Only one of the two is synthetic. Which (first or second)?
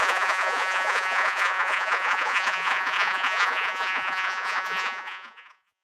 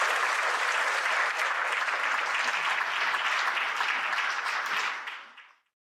first